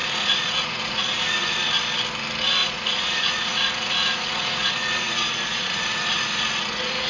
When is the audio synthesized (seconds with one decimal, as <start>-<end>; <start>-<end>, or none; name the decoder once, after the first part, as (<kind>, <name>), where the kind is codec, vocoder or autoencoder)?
0.0-1.7 (vocoder, Vocos); 2.6-7.1